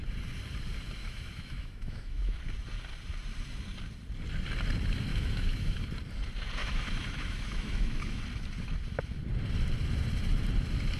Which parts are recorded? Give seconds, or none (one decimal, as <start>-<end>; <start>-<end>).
0.0-1.0; 2.4-5.1; 5.9-6.6; 8.2-11.0